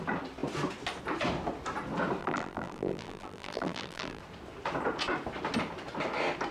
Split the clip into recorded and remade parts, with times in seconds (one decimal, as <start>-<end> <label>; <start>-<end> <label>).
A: 0.0-2.2 recorded; 2.2-4.2 remade; 4.2-6.5 recorded